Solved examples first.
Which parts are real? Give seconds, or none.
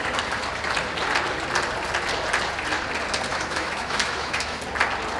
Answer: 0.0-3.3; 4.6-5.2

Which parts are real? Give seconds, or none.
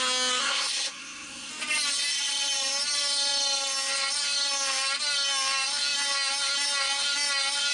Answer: 0.0-0.4; 1.5-7.7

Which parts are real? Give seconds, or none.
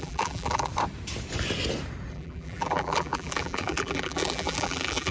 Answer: 0.7-2.1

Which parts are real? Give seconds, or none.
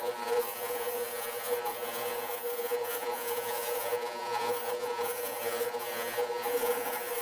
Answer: none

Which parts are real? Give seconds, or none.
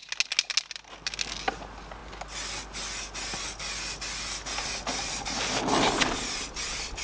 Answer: 0.0-7.0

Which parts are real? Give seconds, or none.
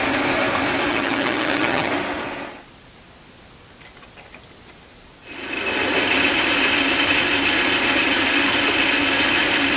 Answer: 0.0-0.9; 1.9-9.8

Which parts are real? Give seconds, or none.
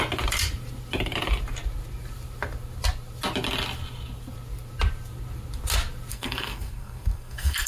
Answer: 0.0-6.1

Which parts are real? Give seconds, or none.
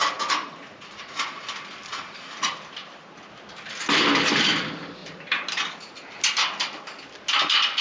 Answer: 0.0-0.6; 1.4-1.9; 2.5-7.8